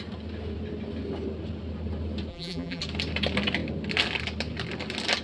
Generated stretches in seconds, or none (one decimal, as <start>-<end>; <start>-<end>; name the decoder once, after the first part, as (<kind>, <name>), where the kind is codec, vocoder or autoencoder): 2.3-2.8 (vocoder, BigVGAN v2)